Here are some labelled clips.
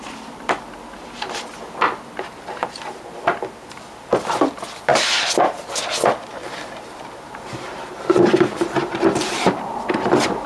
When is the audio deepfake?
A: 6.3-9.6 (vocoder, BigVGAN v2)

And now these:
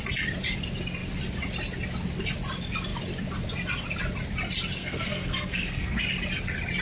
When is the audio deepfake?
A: 4.8-6.0 (codec, SNAC)

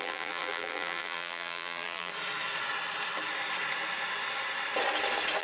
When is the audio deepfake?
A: 0.0-2.1 (vocoder, BigVGAN v2)

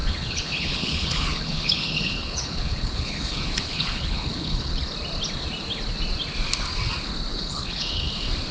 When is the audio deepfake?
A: 0.0-4.8 (codec, HILCodec); 7.3-8.1

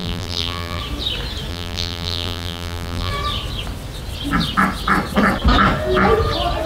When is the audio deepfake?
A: 0.0-0.8 (vocoder, BigVGAN v2); 1.5-3.1

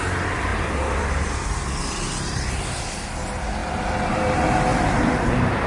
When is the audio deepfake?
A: 0.5-1.3 (vocoder, BigVGAN v2); 4.7-5.7

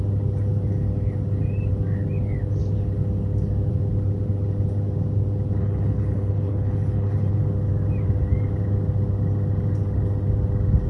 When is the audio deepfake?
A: 5.6-7.4 (codec, HILCodec)

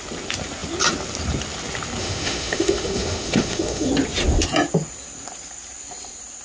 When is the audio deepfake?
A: 2.0-3.9 (autoencoder, DAC-VAE)